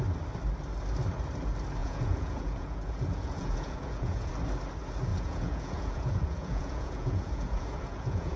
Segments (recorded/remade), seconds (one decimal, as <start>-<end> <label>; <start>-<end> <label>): 0.0-1.8 recorded; 1.8-4.3 remade; 4.3-5.1 recorded; 5.1-8.4 remade